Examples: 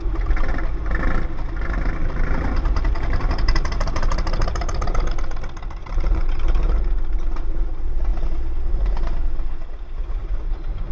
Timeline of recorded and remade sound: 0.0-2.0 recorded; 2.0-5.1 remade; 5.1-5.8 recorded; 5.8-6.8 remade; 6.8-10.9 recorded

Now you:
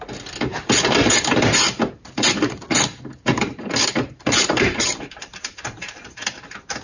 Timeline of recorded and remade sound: 0.0-0.5 recorded; 0.5-2.6 remade; 2.6-3.3 recorded; 3.3-6.2 remade; 6.2-6.8 recorded

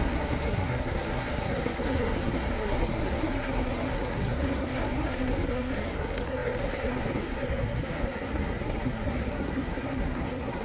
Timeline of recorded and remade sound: 0.0-10.6 remade

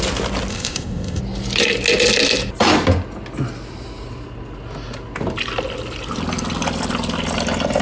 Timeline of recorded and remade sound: 0.0-0.5 recorded; 0.5-1.2 remade; 1.2-7.8 recorded

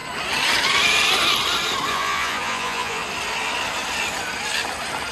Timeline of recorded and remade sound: 0.0-1.9 recorded; 1.9-3.0 remade; 3.0-5.1 recorded

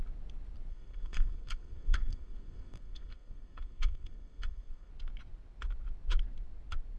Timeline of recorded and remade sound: 0.0-0.7 recorded; 0.7-4.9 remade; 4.9-7.0 recorded

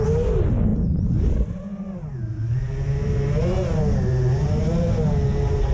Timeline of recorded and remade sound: 0.0-5.7 recorded